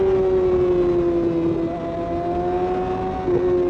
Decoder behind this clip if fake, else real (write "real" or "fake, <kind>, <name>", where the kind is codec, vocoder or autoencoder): real